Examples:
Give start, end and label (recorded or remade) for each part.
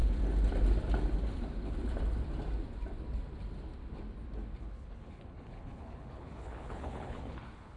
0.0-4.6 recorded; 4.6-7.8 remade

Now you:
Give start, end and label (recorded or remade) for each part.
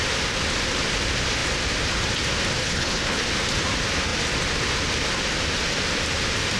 0.0-2.6 recorded; 2.6-3.2 remade; 3.2-6.6 recorded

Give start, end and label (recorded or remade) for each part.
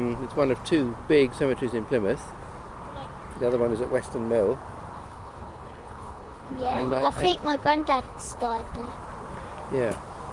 0.0-5.0 recorded; 5.0-8.9 remade; 8.9-10.3 recorded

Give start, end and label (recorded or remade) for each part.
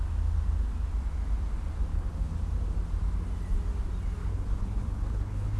0.0-1.9 recorded; 1.9-2.4 remade; 2.4-4.2 recorded; 4.2-5.6 remade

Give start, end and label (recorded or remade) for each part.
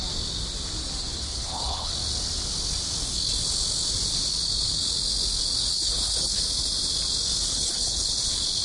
0.0-1.0 recorded; 1.0-1.9 remade; 1.9-5.7 recorded; 5.7-6.4 remade; 6.4-7.5 recorded; 7.5-8.1 remade; 8.1-8.6 recorded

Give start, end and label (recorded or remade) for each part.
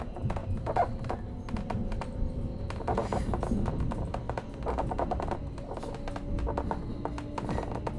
0.0-8.0 recorded